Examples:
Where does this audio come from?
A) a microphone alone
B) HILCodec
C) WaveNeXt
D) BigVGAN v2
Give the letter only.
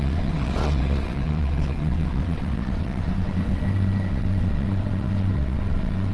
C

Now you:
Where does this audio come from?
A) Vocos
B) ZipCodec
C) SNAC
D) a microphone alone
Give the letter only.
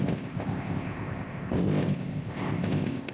B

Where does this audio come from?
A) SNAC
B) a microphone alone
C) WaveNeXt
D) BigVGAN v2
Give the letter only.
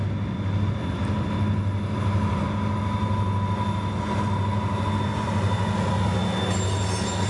B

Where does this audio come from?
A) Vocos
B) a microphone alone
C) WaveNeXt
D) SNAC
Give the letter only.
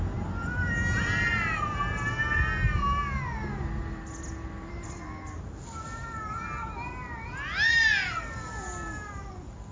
B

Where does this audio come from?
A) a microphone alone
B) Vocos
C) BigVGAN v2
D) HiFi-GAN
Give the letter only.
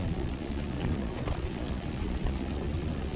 B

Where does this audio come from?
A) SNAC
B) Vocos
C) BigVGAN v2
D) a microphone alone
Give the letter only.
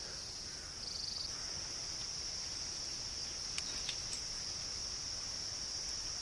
D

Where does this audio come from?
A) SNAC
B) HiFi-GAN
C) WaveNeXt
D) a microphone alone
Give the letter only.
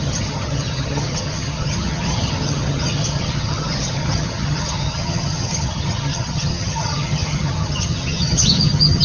B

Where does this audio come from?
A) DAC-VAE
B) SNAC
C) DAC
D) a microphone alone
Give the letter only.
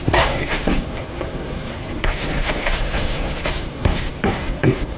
B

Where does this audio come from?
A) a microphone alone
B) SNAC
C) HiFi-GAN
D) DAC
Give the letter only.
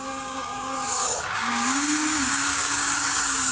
D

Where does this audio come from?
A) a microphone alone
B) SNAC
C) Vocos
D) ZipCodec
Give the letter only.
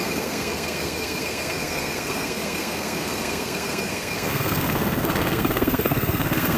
B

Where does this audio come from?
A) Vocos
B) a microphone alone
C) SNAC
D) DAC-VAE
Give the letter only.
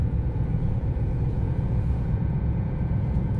A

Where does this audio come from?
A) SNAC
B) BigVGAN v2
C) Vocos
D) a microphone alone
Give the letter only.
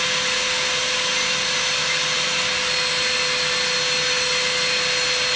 D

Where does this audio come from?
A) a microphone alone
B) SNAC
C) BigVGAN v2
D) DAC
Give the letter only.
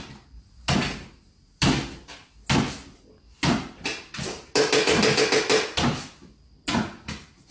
A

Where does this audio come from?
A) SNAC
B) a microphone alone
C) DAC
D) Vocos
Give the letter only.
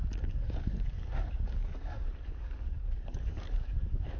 C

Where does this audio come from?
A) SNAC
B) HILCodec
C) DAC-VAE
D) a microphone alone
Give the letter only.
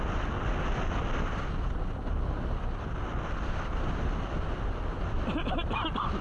D